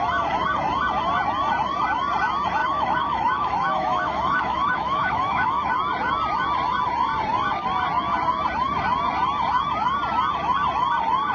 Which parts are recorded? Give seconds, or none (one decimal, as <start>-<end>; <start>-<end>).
0.0-2.6; 5.7-11.3